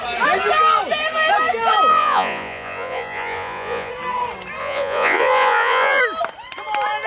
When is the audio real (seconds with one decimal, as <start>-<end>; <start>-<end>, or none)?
0.0-1.9; 3.9-4.6; 6.0-7.1